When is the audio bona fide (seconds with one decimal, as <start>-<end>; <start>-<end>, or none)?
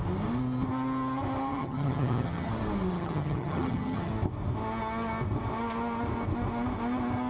0.0-1.5; 2.5-2.9; 4.1-7.3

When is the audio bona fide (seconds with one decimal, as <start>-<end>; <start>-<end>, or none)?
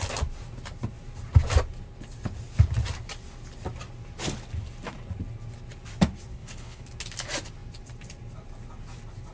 0.0-6.3; 6.8-9.3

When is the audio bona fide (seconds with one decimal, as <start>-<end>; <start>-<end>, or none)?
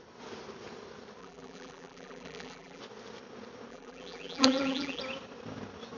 0.0-1.2; 2.8-3.7; 5.0-6.0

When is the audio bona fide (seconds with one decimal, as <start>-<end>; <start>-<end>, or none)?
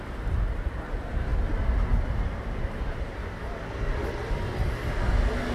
0.0-5.5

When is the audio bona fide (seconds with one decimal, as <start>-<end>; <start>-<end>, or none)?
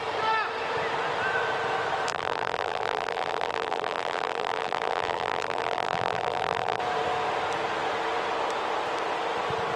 0.0-2.1; 6.8-9.8